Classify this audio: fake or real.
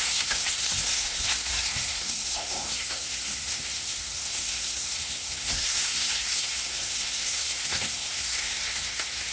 fake